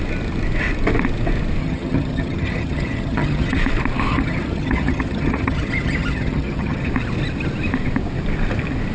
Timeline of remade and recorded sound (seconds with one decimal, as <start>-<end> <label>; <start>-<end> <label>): 0.0-1.6 recorded; 1.6-3.6 remade; 3.6-4.1 recorded; 4.1-6.9 remade; 6.9-8.9 recorded